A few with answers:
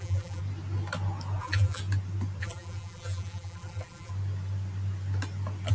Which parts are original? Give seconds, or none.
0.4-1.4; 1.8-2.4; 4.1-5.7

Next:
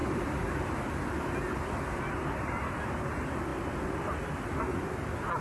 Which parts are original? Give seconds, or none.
0.6-5.4

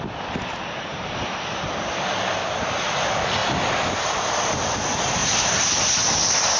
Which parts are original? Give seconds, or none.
0.0-5.2

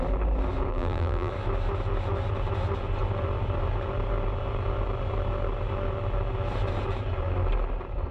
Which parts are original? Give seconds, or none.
0.0-0.7; 1.3-8.1

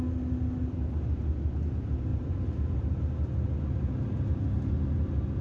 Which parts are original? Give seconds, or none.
0.0-2.1; 2.7-5.4

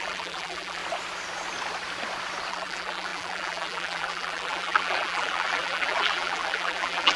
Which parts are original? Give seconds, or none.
0.8-2.5

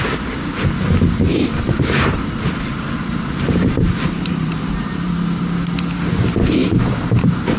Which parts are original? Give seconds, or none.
0.0-1.3; 5.4-6.6